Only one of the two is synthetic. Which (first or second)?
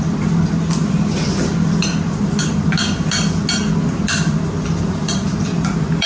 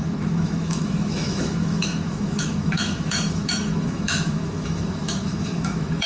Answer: second